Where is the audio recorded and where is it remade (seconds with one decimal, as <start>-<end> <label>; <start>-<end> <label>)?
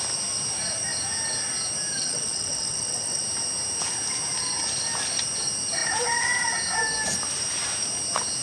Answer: 0.0-2.0 recorded; 2.0-3.2 remade; 3.2-8.4 recorded